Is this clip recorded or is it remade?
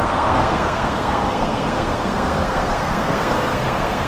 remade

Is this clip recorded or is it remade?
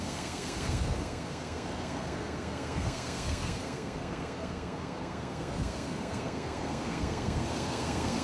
remade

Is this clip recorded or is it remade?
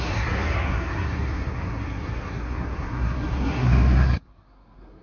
remade